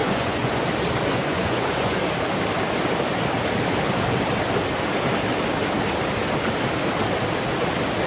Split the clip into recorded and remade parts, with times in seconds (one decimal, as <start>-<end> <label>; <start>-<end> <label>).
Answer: 0.0-0.6 remade; 0.6-1.1 recorded; 1.1-2.0 remade; 2.0-8.1 recorded